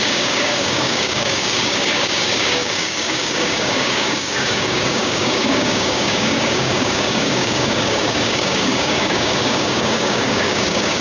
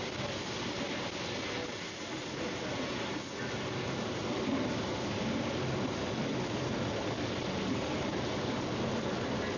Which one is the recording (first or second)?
second